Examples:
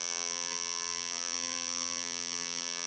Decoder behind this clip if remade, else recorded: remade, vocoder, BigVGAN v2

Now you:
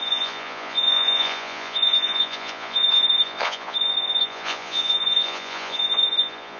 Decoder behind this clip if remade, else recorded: remade, vocoder, Vocos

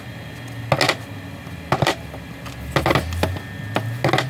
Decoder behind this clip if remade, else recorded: recorded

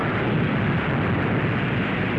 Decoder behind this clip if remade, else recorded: remade, vocoder, BigVGAN v2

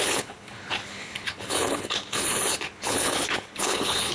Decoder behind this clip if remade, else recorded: remade, codec, HILCodec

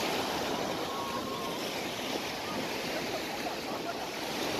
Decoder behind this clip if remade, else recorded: recorded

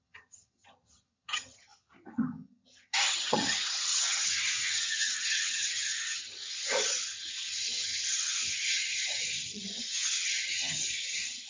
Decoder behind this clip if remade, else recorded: remade, vocoder, HiFi-GAN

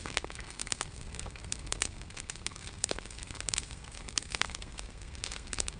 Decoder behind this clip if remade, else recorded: remade, codec, SNAC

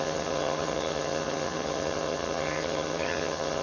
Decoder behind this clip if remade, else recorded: remade, vocoder, HiFi-GAN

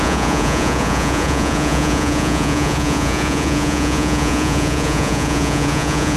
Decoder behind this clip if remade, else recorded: remade, vocoder, Vocos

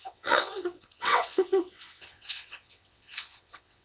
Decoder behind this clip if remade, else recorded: remade, vocoder, WaveNeXt